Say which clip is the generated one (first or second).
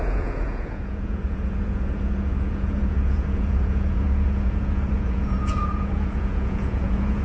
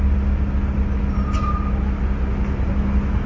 first